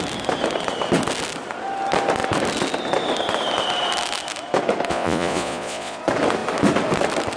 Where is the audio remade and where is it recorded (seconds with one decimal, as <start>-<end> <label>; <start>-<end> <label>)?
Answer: 0.0-4.9 recorded; 4.9-6.0 remade; 6.0-7.4 recorded